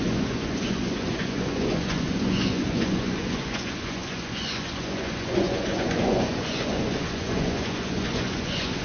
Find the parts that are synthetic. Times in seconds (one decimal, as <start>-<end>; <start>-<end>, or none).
0.0-8.8